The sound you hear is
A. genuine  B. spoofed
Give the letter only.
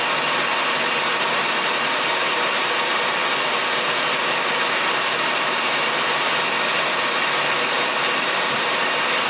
A